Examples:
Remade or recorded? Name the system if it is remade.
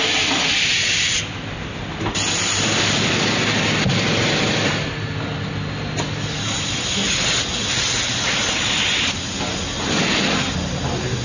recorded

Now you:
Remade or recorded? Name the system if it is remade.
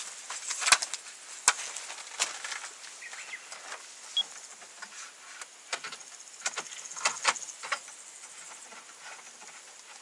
recorded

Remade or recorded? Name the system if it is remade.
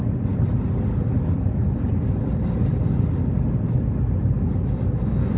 recorded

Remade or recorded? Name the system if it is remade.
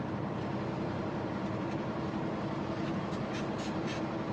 remade, vocoder, BigVGAN v2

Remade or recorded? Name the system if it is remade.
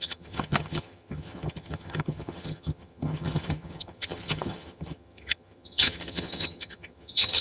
remade, vocoder, HiFi-GAN